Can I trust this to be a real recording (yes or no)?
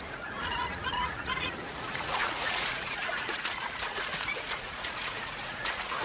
no